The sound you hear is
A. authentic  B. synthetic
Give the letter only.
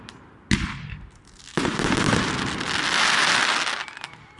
A